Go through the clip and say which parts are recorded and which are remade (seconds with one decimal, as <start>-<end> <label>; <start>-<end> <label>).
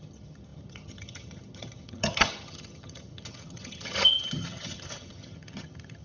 0.0-6.0 remade